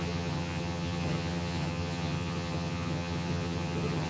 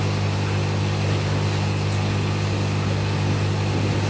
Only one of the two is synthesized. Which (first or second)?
first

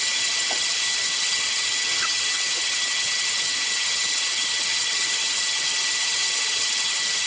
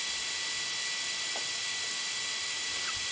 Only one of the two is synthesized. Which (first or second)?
first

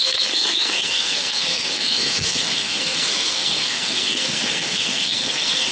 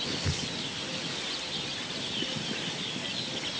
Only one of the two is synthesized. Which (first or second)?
first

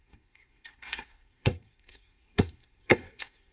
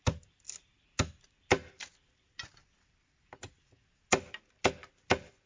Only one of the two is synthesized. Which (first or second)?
first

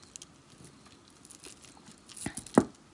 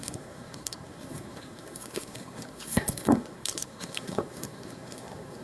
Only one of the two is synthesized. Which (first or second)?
second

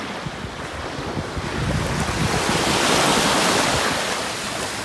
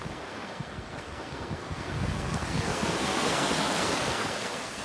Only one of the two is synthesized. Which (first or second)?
second